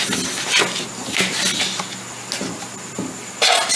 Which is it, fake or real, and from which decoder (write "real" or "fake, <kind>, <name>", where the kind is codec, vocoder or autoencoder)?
real